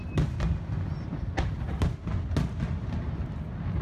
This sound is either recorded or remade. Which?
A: recorded